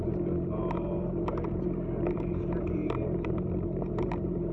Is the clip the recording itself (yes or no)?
no